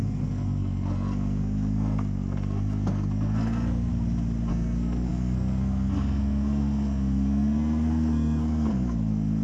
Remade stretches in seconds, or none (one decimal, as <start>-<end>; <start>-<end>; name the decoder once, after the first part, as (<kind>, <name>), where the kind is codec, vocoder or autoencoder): 0.0-3.9 (codec, SNAC); 4.5-9.4